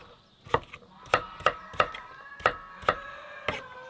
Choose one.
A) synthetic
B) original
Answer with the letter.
B